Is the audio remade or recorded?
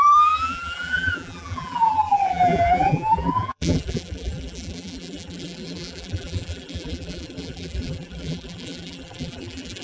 remade